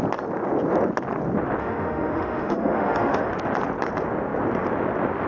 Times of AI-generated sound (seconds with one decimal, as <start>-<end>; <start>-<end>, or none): 1.6-3.3